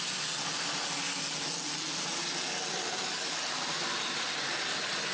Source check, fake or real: real